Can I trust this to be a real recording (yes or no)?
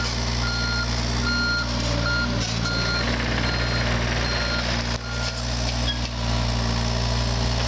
yes